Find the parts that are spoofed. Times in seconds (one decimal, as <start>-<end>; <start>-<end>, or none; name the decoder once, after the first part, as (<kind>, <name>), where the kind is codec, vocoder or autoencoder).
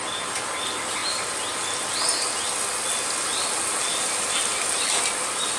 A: none